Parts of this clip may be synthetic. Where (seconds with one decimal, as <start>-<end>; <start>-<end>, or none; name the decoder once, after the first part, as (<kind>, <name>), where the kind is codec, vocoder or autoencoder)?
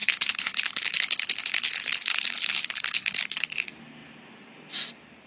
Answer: 0.0-3.2 (codec, HILCodec)